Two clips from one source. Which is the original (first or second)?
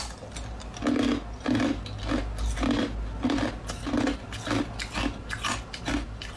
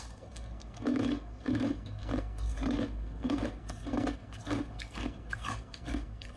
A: first